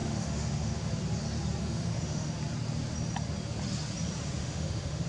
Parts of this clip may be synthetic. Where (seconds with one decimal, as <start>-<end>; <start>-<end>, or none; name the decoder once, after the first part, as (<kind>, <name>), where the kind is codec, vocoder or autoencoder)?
0.0-0.9 (autoencoder, DAC-VAE); 1.6-2.3; 4.4-5.1